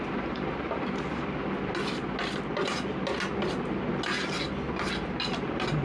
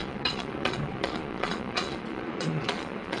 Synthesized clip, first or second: second